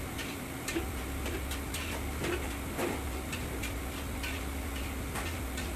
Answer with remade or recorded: recorded